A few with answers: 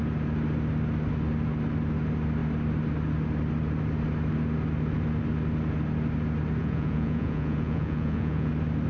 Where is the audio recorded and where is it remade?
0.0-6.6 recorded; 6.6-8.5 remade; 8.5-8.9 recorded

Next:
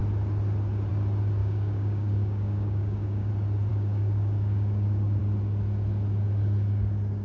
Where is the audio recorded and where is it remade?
0.0-1.4 recorded; 1.4-3.3 remade; 3.3-3.7 recorded; 3.7-5.2 remade; 5.2-7.2 recorded

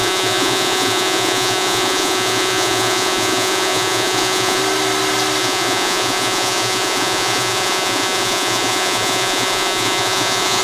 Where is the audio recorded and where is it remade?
0.0-4.6 remade; 4.6-5.4 recorded; 5.4-10.6 remade